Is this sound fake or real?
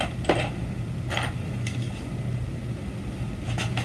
real